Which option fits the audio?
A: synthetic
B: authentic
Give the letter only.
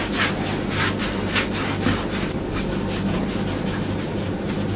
B